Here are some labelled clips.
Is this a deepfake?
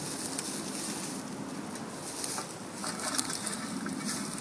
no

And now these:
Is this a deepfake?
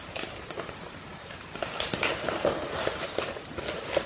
no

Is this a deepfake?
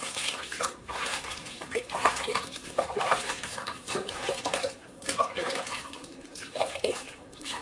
yes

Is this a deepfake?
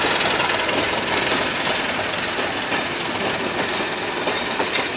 no